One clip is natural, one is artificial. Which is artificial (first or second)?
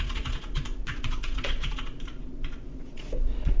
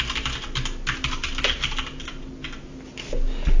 first